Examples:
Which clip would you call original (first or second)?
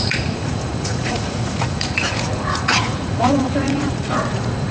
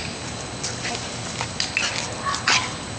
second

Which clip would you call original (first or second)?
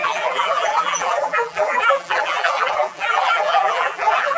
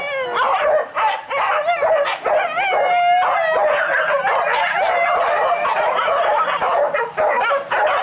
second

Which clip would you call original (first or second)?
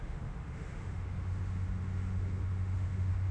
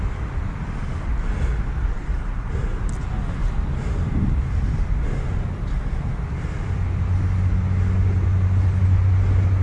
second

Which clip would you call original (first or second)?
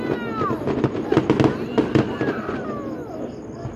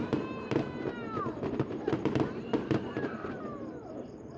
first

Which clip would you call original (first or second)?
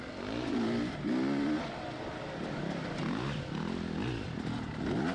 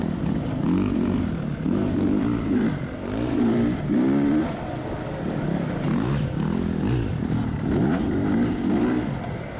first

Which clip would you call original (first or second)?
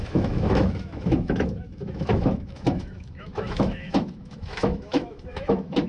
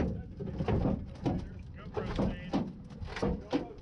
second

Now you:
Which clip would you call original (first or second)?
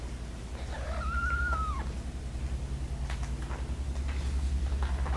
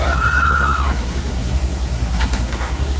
first